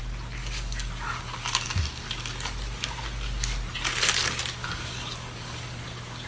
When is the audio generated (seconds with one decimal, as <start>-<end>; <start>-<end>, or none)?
0.4-1.6; 4.6-5.8